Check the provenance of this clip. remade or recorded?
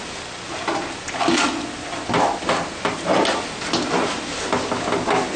recorded